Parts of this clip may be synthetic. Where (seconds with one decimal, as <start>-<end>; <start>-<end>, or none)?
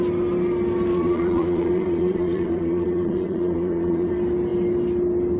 0.9-4.1